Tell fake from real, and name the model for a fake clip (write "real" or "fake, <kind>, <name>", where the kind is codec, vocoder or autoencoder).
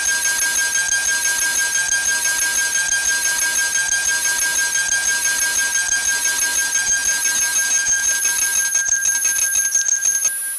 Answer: real